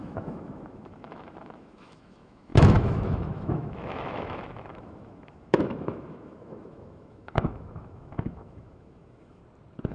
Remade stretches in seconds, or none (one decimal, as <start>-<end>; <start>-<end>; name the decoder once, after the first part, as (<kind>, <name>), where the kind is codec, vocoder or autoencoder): 0.0-9.4 (autoencoder, DAC-VAE)